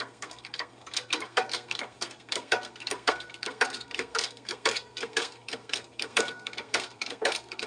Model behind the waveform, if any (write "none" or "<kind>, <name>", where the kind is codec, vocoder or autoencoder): codec, SNAC